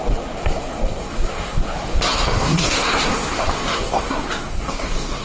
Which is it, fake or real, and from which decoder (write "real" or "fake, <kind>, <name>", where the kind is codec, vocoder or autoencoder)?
fake, codec, SNAC